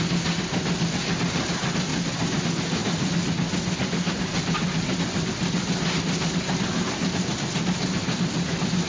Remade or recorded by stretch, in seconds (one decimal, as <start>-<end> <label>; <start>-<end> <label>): 0.0-2.8 recorded; 2.8-3.3 remade; 3.3-4.3 recorded; 4.3-4.9 remade; 4.9-8.9 recorded